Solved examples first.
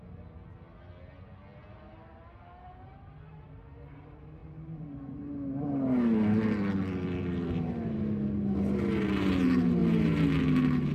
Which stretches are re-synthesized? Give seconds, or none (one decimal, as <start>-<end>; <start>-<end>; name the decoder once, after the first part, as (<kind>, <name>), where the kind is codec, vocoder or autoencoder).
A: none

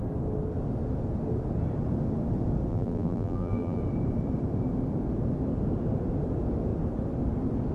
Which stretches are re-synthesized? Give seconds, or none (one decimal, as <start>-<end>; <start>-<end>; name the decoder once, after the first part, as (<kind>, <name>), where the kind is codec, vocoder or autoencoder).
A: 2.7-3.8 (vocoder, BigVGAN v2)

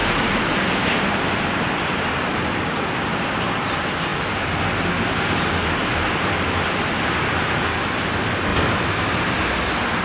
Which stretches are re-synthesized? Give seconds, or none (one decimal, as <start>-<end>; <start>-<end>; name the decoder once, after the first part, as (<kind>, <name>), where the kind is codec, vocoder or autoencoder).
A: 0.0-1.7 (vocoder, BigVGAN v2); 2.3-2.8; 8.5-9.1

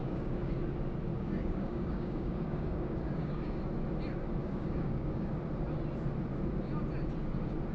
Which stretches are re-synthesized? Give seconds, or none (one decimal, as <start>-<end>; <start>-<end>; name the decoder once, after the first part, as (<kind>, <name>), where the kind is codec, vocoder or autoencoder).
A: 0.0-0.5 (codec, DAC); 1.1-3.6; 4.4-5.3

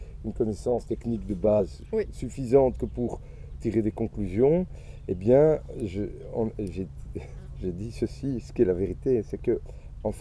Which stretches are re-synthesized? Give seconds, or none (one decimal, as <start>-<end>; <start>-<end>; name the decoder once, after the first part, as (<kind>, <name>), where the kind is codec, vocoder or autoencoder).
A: 0.7-1.6 (codec, HILCodec)

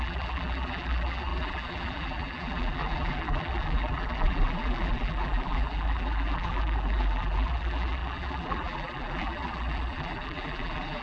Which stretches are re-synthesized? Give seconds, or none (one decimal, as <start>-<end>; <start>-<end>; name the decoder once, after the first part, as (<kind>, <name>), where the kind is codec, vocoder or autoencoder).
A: 0.0-11.0 (vocoder, BigVGAN v2)

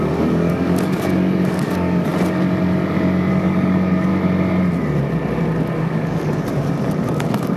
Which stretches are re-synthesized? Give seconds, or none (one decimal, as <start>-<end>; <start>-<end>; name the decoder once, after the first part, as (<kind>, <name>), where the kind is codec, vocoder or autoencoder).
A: 0.0-2.1 (codec, DAC); 3.3-4.1; 5.8-7.6